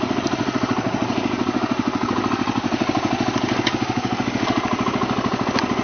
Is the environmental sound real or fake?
real